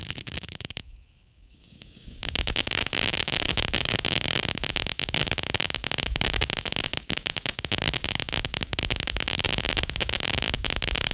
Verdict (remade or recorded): remade